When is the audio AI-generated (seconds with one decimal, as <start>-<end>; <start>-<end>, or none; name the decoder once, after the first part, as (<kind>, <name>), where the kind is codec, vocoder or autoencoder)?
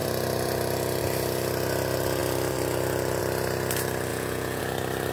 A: 4.1-4.6 (vocoder, Vocos)